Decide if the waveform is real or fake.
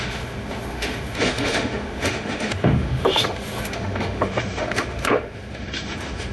fake